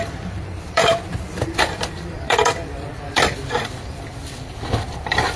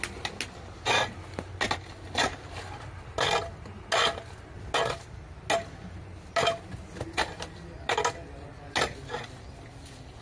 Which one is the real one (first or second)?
second